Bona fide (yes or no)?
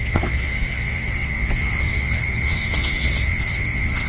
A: no